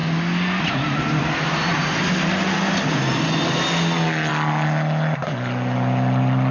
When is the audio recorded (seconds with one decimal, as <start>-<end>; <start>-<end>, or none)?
0.0-6.5